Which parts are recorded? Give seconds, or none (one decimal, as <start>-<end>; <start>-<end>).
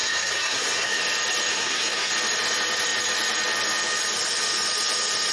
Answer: 1.0-1.5; 2.1-5.3